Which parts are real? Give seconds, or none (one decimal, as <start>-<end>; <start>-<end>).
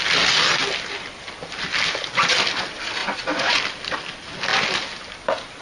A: 0.0-3.0; 3.6-5.6